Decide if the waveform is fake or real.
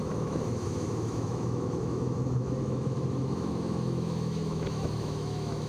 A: fake